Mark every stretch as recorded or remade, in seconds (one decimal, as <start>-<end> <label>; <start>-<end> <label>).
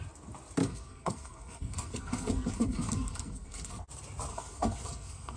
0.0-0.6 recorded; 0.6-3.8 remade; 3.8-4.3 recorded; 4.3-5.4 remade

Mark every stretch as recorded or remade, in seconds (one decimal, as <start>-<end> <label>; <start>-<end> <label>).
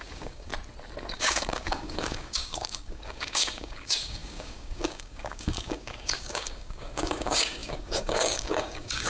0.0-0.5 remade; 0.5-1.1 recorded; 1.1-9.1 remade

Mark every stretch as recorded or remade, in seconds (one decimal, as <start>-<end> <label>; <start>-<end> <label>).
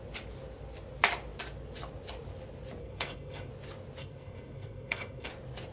0.0-2.8 recorded; 2.8-3.5 remade; 3.5-4.0 recorded; 4.0-5.3 remade; 5.3-5.7 recorded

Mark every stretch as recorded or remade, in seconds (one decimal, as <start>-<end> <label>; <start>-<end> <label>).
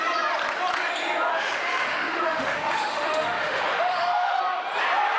0.0-1.3 recorded; 1.3-4.4 remade; 4.4-5.2 recorded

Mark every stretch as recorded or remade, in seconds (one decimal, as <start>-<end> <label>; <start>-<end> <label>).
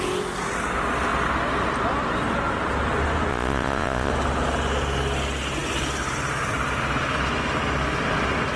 0.0-3.3 recorded; 3.3-4.1 remade; 4.1-8.6 recorded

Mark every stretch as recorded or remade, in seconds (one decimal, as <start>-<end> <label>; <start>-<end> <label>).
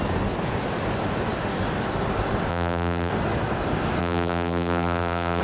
0.0-2.5 recorded; 2.5-3.1 remade; 3.1-4.0 recorded; 4.0-5.4 remade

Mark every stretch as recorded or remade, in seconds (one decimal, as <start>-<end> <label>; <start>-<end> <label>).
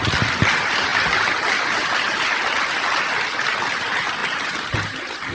0.0-5.3 recorded